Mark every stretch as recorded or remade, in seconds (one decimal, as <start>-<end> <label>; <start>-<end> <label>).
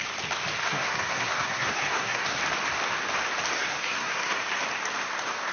0.0-0.6 recorded; 0.6-2.4 remade; 2.4-3.6 recorded; 3.6-4.4 remade; 4.4-5.5 recorded